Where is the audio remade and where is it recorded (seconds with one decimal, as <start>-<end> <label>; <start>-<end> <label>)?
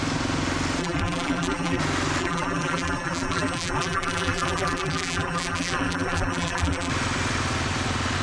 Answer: 0.0-0.8 recorded; 0.8-1.8 remade; 1.8-2.2 recorded; 2.2-6.9 remade; 6.9-8.2 recorded